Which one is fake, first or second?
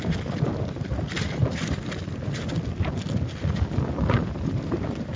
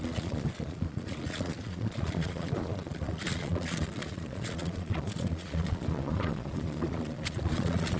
second